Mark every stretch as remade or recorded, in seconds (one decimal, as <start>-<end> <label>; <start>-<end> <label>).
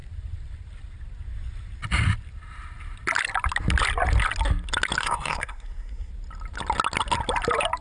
0.0-5.0 recorded; 5.0-6.1 remade; 6.1-7.8 recorded